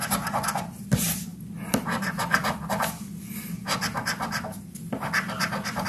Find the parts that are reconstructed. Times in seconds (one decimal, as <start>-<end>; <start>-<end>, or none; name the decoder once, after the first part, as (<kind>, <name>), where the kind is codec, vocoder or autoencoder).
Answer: none